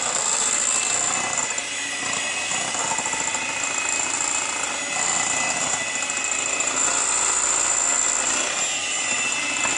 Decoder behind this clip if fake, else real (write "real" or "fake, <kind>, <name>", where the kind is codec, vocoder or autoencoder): real